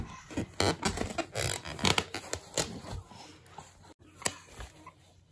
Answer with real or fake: real